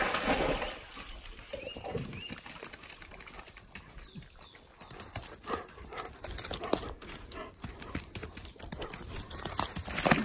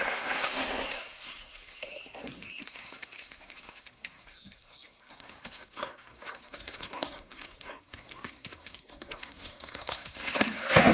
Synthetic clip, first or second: second